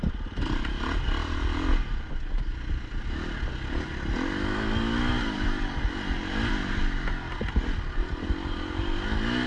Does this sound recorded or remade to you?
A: recorded